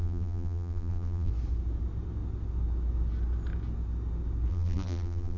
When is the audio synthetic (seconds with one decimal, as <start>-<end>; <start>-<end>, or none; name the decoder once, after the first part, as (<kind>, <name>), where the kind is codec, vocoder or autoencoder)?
0.0-1.3 (vocoder, BigVGAN v2); 4.5-5.4